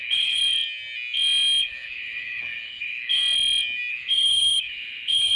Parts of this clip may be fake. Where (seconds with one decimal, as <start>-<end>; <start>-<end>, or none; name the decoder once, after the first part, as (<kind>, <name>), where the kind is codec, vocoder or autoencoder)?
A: 0.0-0.4 (codec, HILCodec); 1.6-3.2; 3.9-5.4